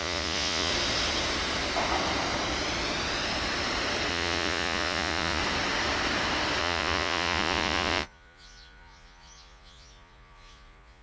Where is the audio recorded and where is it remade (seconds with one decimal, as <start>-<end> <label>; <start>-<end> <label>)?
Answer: 0.0-0.7 remade; 0.7-4.1 recorded; 4.1-5.4 remade; 5.4-6.6 recorded; 6.6-11.0 remade